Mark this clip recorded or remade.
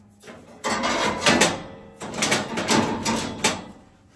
recorded